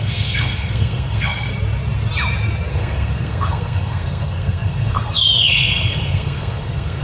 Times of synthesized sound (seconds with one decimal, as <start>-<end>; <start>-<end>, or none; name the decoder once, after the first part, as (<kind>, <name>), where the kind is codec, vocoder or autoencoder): 0.0-1.5 (codec, SNAC); 2.7-7.0